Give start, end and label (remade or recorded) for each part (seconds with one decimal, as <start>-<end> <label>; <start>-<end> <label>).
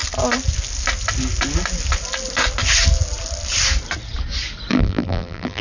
0.0-4.7 recorded; 4.7-5.6 remade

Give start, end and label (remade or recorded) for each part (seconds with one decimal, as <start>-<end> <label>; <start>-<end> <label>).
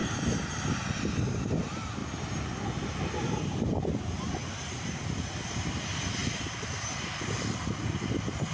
0.0-1.2 remade; 1.2-4.4 recorded; 4.4-5.6 remade; 5.6-6.2 recorded; 6.2-8.1 remade; 8.1-8.5 recorded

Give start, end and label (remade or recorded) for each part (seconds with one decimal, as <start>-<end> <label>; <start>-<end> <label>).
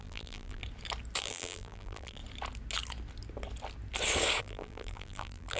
0.0-0.6 remade; 0.6-1.2 recorded; 1.2-2.2 remade; 2.2-4.4 recorded; 4.4-5.6 remade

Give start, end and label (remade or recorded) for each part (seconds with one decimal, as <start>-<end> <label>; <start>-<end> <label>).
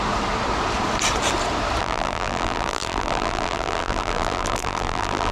0.0-1.8 recorded; 1.8-5.3 remade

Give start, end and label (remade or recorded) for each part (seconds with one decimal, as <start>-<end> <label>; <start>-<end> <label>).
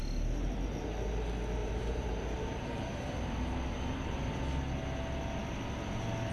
0.0-1.6 recorded; 1.6-4.4 remade; 4.4-6.3 recorded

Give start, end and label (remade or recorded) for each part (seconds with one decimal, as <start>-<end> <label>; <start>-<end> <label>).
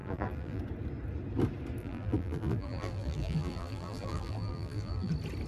0.0-0.6 remade; 0.6-1.8 recorded; 1.8-5.1 remade; 5.1-5.5 recorded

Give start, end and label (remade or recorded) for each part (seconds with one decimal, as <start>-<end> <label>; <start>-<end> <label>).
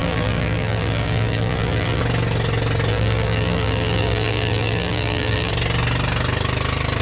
0.0-2.0 remade; 2.0-2.9 recorded; 2.9-5.5 remade; 5.5-7.0 recorded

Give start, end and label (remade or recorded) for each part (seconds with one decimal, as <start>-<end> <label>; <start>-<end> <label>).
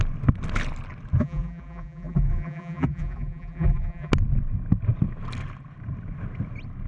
0.0-1.2 recorded; 1.2-4.1 remade; 4.1-6.9 recorded